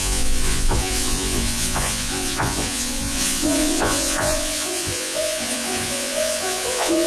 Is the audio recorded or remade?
remade